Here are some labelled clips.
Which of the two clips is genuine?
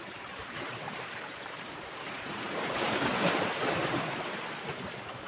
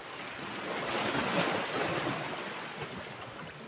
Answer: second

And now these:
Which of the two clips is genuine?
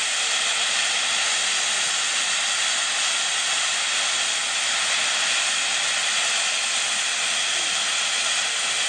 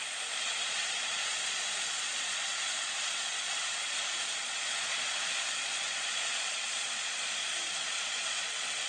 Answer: first